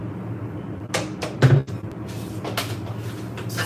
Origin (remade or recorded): recorded